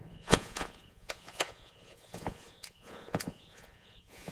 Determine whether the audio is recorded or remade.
remade